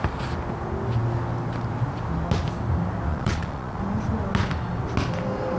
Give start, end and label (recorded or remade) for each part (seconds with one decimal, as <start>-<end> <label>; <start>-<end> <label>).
0.0-3.1 recorded; 3.1-3.8 remade; 3.8-5.6 recorded